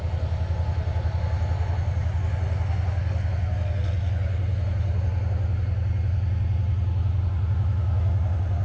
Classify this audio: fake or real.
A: real